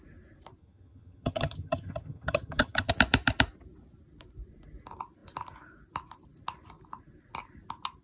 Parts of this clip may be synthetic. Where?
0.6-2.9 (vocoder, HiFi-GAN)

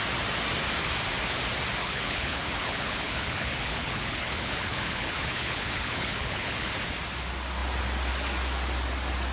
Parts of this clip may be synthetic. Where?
1.8-6.7 (codec, HILCodec)

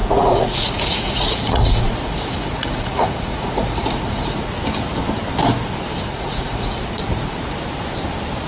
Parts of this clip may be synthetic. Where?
0.0-4.5 (vocoder, Vocos); 6.1-7.3